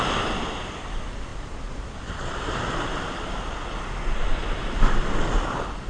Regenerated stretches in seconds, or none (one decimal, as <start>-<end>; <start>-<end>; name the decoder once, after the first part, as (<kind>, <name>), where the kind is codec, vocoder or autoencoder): none